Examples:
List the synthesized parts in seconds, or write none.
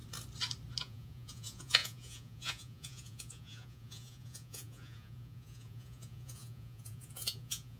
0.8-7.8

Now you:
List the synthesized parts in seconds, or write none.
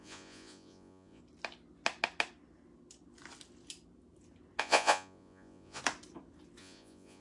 0.0-1.2; 4.6-5.8; 6.6-7.2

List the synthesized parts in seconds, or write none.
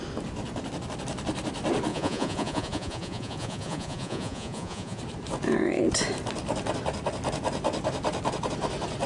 1.9-5.0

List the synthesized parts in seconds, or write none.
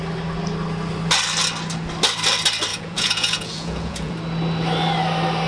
2.7-4.1